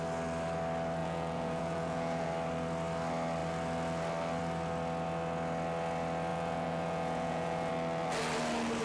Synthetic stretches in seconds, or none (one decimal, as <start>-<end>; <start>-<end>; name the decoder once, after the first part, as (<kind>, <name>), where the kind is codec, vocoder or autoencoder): 1.0-2.3 (vocoder, Vocos); 6.3-7.7